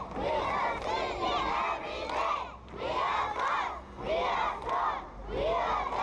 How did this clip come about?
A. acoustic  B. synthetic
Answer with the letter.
A